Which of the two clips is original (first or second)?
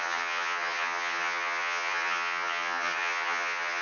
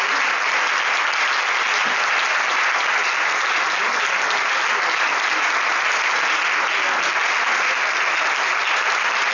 second